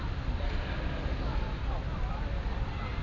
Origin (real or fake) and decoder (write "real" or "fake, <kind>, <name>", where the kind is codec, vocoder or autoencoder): real